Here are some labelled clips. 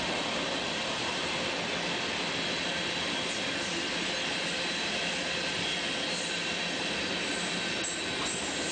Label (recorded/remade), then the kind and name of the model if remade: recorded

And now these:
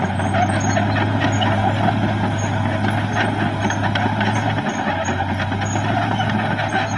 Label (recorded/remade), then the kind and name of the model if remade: recorded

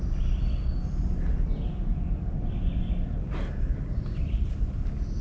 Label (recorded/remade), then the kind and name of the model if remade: recorded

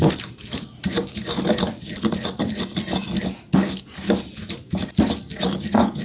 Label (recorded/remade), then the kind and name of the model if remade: recorded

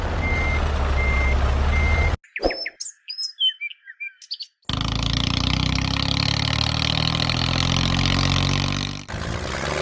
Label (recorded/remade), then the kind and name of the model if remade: recorded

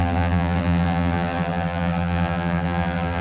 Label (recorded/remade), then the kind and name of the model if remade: remade, vocoder, BigVGAN v2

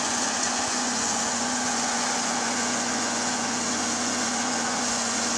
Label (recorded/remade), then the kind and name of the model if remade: remade, vocoder, Vocos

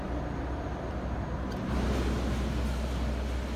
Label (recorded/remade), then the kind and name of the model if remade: recorded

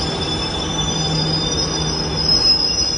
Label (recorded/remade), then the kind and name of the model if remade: recorded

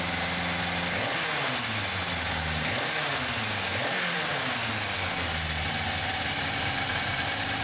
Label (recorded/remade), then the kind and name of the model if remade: recorded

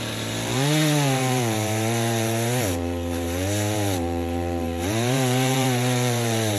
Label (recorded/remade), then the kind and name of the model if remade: remade, vocoder, BigVGAN v2